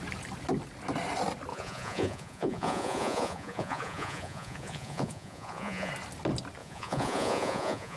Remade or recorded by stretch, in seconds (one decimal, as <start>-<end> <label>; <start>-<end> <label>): 0.0-1.5 recorded; 1.5-5.9 remade; 5.9-6.6 recorded; 6.6-8.0 remade